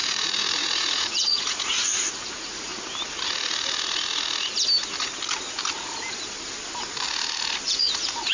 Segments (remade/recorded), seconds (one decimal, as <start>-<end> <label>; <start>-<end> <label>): 0.0-2.7 remade; 2.7-7.7 recorded; 7.7-8.3 remade